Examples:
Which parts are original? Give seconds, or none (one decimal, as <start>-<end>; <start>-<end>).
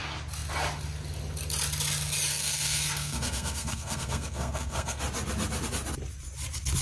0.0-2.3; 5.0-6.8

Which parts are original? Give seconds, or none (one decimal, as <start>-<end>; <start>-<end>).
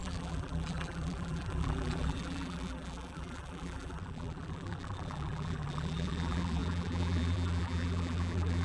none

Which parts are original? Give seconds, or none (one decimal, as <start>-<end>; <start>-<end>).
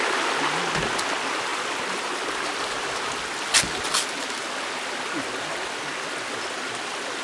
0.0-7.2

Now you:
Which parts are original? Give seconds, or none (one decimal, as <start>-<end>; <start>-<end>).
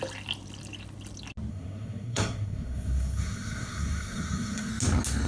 0.0-1.5; 4.7-5.3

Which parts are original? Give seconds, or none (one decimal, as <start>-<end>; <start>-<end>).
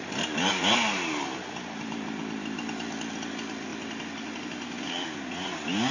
0.0-5.9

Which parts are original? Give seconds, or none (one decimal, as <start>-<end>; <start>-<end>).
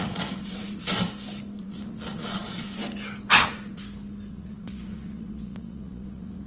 0.9-1.6; 2.8-3.3; 3.8-4.3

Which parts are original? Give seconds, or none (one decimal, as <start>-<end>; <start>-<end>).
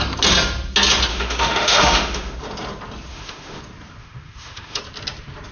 0.0-1.1; 2.4-3.1; 3.6-4.0; 4.8-5.5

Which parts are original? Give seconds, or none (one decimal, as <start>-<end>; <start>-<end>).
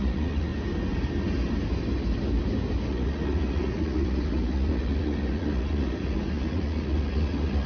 0.5-2.9